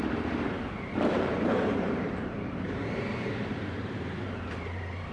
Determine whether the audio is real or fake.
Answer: fake